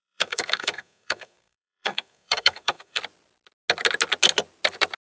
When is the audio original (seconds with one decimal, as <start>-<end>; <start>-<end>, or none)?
3.0-5.0